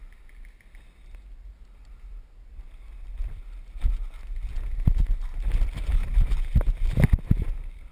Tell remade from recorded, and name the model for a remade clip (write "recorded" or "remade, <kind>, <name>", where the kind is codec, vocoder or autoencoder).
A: recorded